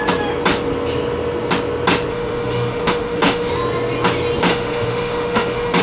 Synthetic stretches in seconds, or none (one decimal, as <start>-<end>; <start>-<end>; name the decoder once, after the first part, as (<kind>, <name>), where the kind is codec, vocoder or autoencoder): 2.1-3.5 (autoencoder, DAC-VAE); 4.4-5.8